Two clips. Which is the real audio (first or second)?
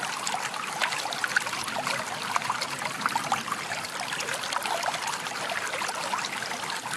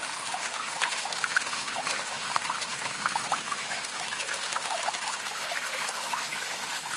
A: first